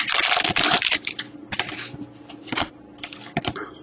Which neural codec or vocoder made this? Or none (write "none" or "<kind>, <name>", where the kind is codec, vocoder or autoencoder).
none